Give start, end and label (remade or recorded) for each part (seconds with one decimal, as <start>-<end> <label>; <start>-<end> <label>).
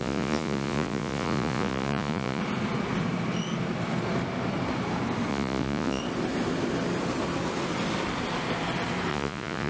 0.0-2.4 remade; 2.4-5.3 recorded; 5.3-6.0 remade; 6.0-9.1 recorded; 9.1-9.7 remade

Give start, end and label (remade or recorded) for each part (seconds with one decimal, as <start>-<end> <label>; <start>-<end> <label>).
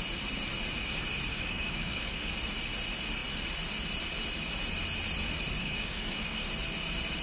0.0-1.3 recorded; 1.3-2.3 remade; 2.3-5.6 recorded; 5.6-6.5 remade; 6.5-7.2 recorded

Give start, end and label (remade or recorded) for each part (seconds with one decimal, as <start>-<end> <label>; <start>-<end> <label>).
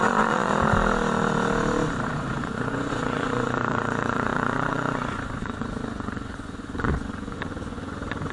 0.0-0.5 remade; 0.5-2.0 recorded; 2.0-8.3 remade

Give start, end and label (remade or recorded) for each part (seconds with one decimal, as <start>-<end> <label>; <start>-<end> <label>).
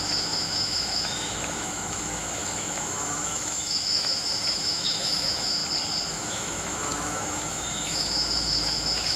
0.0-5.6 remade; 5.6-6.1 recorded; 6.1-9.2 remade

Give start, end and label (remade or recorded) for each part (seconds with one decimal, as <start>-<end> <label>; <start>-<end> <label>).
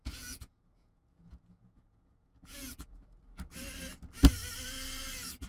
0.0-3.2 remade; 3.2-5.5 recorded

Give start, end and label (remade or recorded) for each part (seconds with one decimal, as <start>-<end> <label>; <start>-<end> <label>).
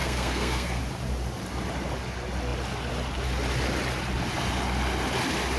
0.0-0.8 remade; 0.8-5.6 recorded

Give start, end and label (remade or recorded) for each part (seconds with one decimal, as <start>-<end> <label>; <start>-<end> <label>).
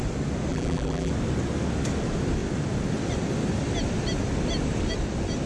0.0-0.5 recorded; 0.5-1.1 remade; 1.1-5.5 recorded